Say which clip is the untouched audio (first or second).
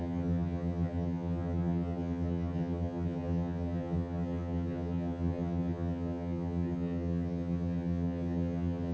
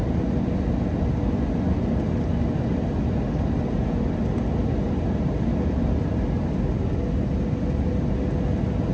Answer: second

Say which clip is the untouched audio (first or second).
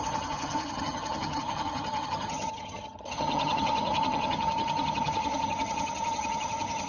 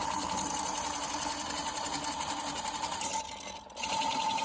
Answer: second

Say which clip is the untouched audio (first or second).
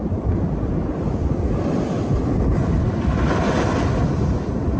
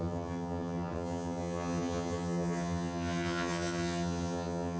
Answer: first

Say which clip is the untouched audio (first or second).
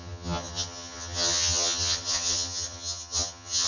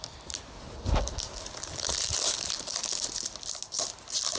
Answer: second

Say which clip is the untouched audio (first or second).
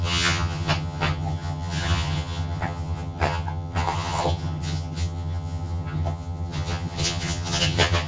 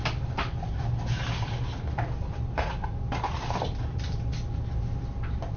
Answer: second